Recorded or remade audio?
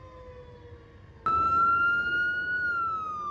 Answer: recorded